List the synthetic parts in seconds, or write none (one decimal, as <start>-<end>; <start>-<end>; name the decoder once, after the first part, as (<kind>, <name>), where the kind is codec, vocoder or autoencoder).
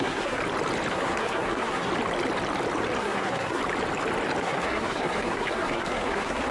0.0-0.4 (codec, SNAC); 0.9-1.9; 3.0-3.6; 4.4-6.5